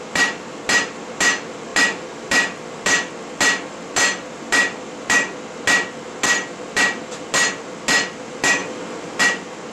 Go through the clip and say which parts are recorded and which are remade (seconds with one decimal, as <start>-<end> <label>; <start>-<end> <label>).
0.0-9.7 recorded